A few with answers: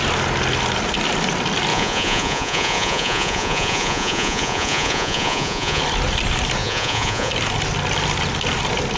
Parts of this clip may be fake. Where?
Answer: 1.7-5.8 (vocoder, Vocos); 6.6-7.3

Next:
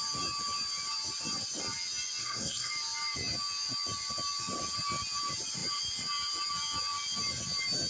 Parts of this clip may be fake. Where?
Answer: 2.2-2.7 (codec, SNAC)

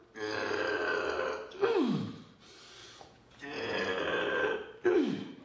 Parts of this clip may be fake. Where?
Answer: 2.8-3.8 (vocoder, Vocos)

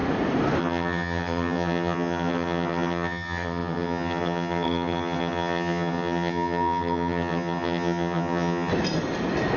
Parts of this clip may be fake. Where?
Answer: 0.6-8.7 (vocoder, HiFi-GAN)

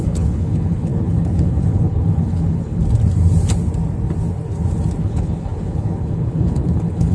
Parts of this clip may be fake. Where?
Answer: 0.0-2.8 (codec, HILCodec); 5.0-7.1

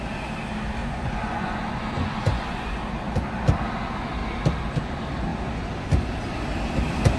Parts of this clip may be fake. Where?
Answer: 0.8-2.8 (vocoder, Vocos)